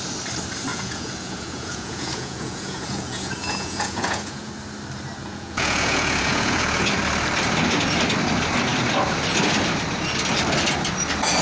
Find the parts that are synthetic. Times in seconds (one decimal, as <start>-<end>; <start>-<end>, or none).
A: 0.7-4.5; 5.2-6.9